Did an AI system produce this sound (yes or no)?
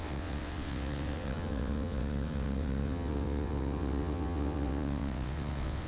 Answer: yes